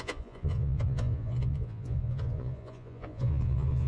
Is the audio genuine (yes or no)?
no